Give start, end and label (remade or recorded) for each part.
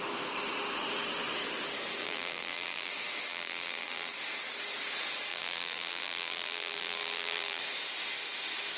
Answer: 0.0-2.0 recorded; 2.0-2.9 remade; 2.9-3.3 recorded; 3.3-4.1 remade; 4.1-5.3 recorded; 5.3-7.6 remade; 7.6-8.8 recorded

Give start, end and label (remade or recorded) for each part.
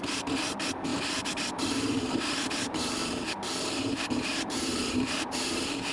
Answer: 0.0-3.0 remade; 3.0-3.8 recorded; 3.8-5.9 remade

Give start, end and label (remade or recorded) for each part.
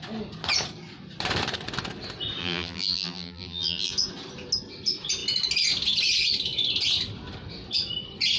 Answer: 0.0-2.4 recorded; 2.4-3.9 remade; 3.9-8.4 recorded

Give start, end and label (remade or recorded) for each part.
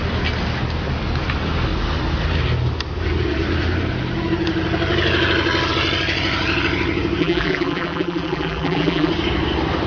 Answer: 0.0-7.2 recorded; 7.2-9.1 remade; 9.1-9.9 recorded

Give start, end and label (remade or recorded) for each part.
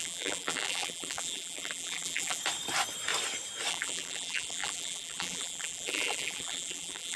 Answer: 0.0-2.4 remade; 2.4-3.7 recorded; 3.7-7.2 remade